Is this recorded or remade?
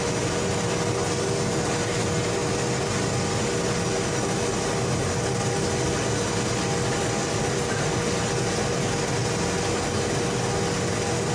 recorded